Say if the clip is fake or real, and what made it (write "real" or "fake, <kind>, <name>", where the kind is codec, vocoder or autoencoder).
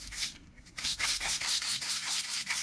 fake, codec, SNAC